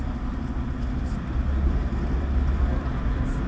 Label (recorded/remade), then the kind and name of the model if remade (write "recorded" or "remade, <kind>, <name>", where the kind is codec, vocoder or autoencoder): recorded